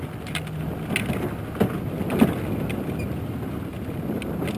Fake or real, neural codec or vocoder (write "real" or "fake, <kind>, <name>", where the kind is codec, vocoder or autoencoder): real